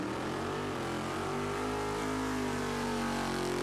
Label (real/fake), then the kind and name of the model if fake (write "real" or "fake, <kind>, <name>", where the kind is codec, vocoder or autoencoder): real